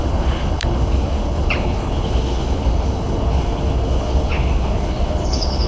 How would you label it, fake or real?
fake